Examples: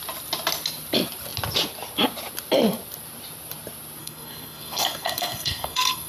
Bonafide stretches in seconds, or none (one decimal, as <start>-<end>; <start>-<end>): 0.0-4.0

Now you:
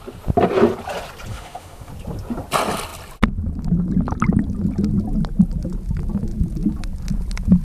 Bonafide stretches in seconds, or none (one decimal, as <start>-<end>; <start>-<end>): 0.0-1.3; 1.9-7.6

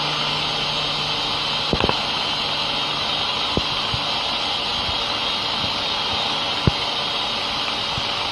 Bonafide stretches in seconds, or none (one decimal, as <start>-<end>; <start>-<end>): 0.0-8.3